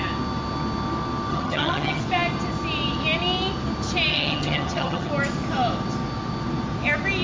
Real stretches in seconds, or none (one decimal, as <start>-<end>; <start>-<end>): 0.0-1.3; 2.0-4.1; 5.1-7.2